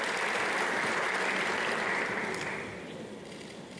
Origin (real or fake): real